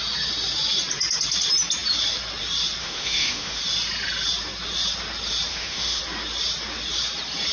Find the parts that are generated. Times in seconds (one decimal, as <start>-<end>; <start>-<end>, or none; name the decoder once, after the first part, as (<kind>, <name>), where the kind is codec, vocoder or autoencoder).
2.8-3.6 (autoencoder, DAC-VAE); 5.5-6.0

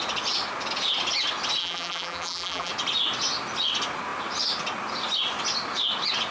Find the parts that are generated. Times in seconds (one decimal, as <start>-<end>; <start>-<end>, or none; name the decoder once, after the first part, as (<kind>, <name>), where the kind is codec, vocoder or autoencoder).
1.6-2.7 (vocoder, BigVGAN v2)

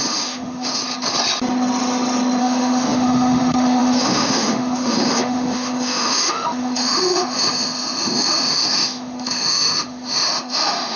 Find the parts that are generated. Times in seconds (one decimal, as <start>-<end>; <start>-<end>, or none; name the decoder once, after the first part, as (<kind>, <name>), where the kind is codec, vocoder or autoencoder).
0.0-0.8 (autoencoder, DAC-VAE); 2.4-11.0

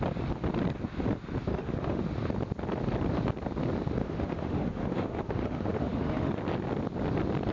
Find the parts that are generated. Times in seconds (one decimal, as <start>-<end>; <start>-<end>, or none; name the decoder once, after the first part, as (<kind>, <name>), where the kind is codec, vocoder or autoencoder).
1.5-2.0 (autoencoder, DAC-VAE); 4.0-6.3